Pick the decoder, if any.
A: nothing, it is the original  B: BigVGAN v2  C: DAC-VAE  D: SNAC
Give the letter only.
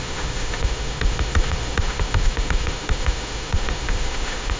C